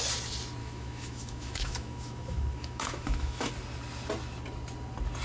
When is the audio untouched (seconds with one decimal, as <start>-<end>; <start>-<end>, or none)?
0.0-0.6; 3.5-5.2